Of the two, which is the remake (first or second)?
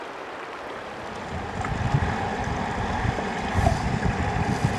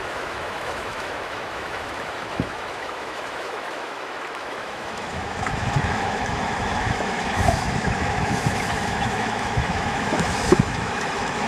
second